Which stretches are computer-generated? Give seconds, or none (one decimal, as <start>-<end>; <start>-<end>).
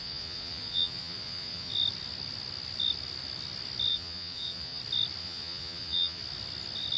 0.0-1.7; 3.9-4.8; 5.2-6.2